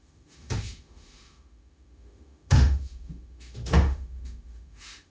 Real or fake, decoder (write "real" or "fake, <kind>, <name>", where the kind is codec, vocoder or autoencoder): fake, autoencoder, DAC-VAE